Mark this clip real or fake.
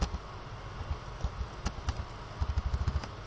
real